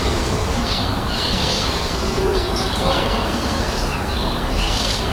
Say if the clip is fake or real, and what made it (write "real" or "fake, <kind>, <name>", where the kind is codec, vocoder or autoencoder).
fake, codec, SNAC